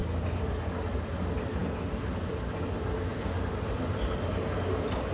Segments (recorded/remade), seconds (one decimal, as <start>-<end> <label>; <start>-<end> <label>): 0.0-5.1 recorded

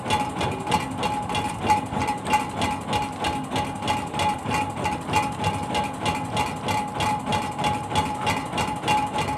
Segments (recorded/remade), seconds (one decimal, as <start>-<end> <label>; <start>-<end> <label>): 0.0-9.4 recorded

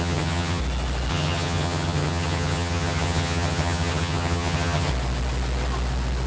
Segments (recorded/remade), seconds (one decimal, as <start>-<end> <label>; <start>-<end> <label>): 0.0-0.6 remade; 0.6-1.1 recorded; 1.1-4.9 remade; 4.9-6.3 recorded

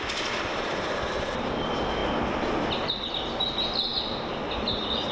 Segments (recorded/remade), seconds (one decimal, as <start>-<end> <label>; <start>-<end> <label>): 0.0-2.0 remade; 2.0-3.1 recorded; 3.1-3.9 remade; 3.9-5.1 recorded

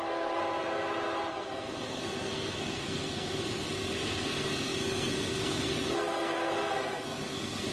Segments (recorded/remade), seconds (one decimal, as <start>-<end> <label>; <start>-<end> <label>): 0.0-0.4 remade; 0.4-1.3 recorded; 1.3-7.7 remade

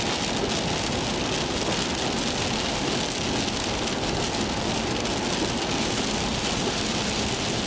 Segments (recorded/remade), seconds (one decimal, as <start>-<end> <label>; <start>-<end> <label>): 0.0-7.7 recorded

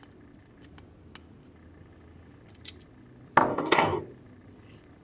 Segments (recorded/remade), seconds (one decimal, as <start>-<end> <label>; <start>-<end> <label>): 0.0-3.5 recorded; 3.5-4.0 remade; 4.0-5.0 recorded